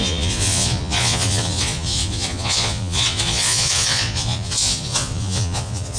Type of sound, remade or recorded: remade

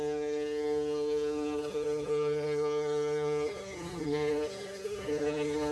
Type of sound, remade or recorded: remade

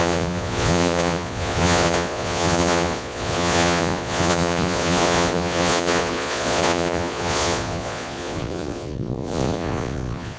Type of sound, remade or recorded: remade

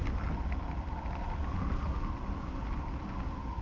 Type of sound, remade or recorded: recorded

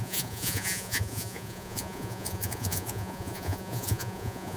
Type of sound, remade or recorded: remade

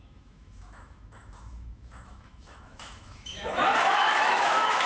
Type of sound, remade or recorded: remade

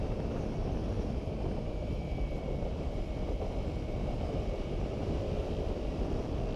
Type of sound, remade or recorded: remade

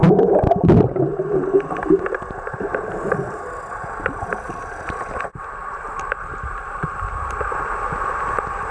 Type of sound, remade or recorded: remade